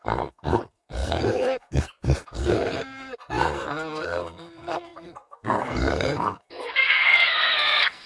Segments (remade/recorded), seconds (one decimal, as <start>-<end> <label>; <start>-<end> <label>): 0.0-8.1 remade